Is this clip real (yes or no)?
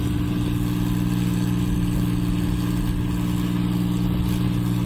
yes